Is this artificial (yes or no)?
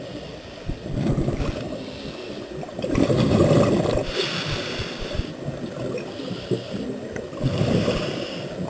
yes